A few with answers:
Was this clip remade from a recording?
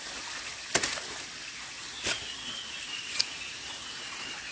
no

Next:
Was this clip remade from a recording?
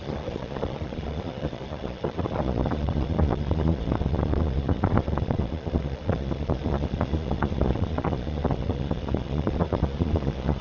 yes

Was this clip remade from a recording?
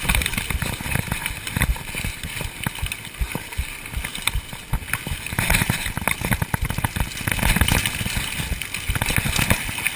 no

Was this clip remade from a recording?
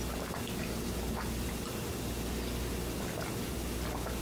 no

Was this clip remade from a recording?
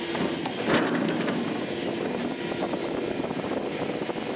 no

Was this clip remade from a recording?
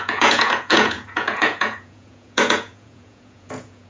yes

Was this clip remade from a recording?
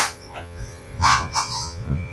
yes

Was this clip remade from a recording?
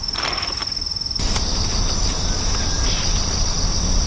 no